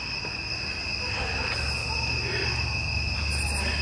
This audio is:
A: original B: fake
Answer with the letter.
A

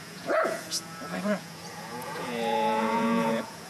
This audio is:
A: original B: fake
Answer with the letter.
B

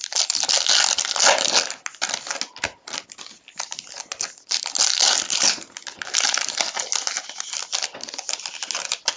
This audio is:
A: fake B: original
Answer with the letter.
B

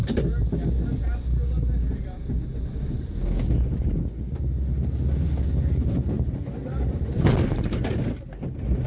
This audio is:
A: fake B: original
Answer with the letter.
B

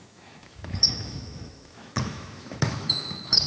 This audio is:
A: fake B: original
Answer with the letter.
A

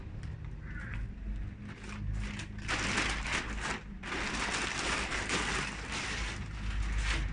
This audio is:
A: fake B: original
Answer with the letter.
B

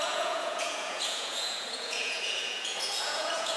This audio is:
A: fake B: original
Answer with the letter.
A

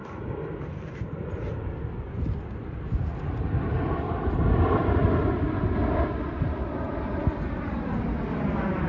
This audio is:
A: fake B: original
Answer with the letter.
B